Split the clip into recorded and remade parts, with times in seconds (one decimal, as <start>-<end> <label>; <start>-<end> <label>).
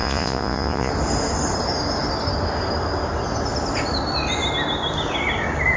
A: 0.0-0.9 remade; 0.9-5.8 recorded